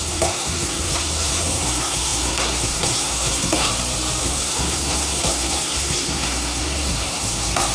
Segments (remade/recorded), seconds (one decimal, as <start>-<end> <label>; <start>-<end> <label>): 0.0-3.7 remade; 3.7-4.2 recorded; 4.2-7.7 remade